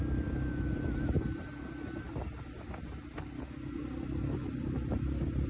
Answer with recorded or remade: recorded